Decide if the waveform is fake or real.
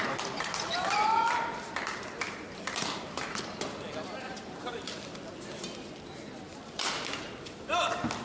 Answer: real